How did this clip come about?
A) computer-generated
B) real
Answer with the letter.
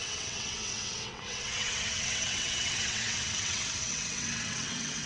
A